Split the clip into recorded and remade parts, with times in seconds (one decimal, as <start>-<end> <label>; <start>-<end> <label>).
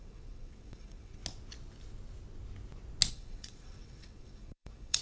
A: 0.0-1.2 remade; 1.2-3.1 recorded; 3.1-5.0 remade